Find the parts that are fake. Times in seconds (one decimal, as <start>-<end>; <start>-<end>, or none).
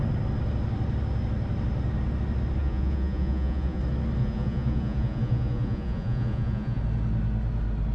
2.6-3.8; 4.2-6.8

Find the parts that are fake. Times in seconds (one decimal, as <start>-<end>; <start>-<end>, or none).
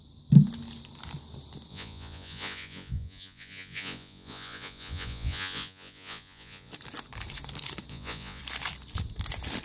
1.7-6.7; 7.9-8.4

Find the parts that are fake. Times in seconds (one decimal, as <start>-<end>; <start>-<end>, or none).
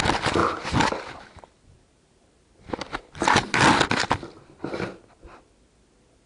none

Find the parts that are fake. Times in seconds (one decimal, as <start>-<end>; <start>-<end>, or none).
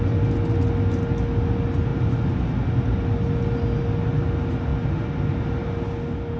none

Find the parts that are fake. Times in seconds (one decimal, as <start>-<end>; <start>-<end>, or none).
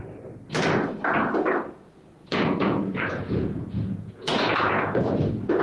2.2-5.6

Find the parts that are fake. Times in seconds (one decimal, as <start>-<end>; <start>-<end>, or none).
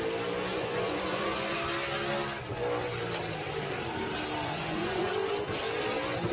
0.5-1.6; 4.4-5.1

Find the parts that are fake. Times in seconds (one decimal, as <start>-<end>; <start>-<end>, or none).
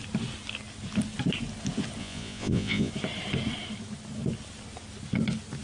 2.0-2.9